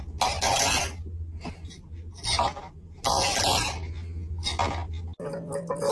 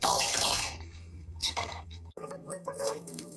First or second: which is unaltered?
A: first